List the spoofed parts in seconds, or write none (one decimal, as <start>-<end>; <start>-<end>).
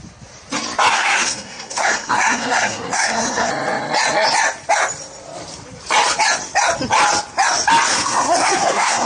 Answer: 0.9-3.5; 7.9-9.1